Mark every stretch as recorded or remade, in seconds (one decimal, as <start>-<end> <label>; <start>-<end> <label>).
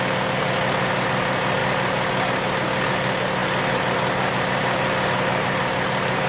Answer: 0.0-6.3 recorded